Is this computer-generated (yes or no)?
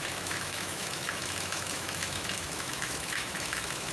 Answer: yes